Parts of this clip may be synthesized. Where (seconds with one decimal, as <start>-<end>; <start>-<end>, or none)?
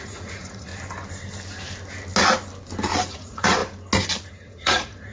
0.0-0.7; 3.1-3.6; 4.3-5.1